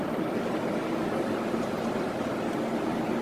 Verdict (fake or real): real